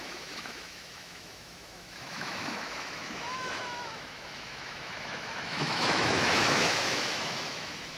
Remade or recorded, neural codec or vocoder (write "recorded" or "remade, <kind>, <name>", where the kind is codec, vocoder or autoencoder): remade, autoencoder, DAC-VAE